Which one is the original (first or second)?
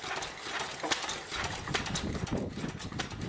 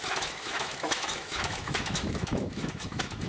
first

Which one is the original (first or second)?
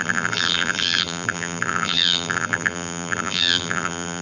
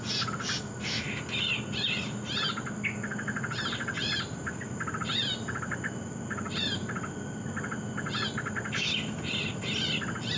second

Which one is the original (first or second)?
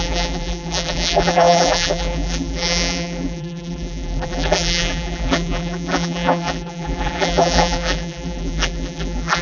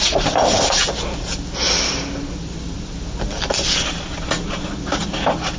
second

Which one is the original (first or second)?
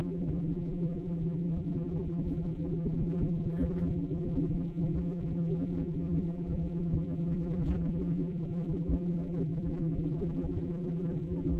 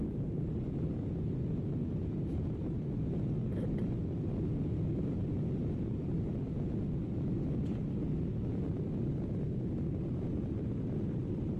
second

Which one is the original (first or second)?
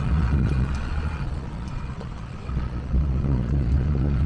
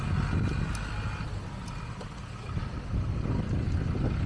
second